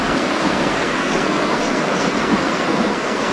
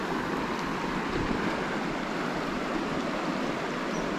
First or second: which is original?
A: second